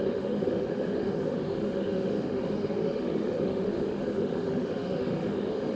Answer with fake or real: fake